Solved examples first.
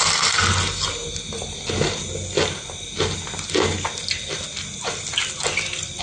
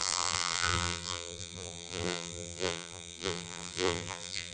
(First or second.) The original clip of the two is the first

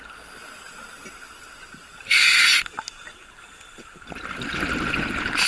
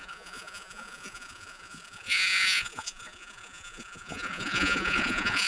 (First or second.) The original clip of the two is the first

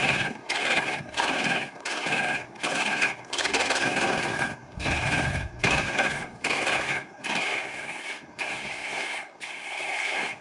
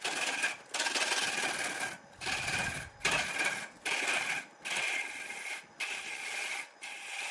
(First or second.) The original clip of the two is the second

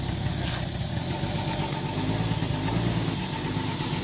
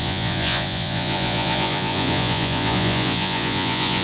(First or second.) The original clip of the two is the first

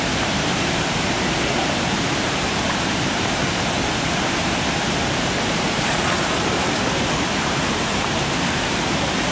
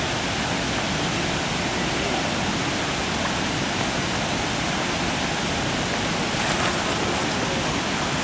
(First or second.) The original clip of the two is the second